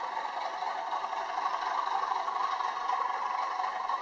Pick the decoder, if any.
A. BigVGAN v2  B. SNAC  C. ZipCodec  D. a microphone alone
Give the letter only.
D